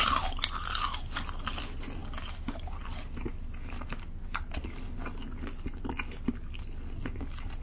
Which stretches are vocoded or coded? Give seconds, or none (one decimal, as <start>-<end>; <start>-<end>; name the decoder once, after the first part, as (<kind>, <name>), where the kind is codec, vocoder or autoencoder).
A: none